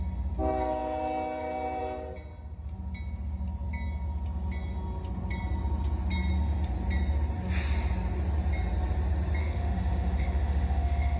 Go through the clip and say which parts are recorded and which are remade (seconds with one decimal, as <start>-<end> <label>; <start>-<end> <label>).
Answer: 0.0-9.4 recorded; 9.4-11.2 remade